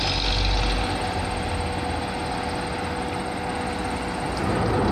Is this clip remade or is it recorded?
recorded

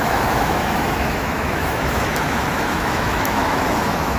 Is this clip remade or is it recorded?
remade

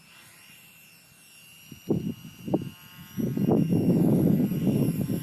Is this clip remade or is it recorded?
recorded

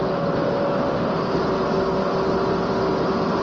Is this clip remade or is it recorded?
recorded